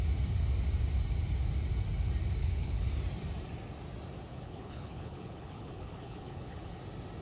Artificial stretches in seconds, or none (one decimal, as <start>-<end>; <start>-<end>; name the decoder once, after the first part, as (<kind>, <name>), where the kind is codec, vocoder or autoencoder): 2.4-2.9 (codec, HILCodec); 4.3-6.8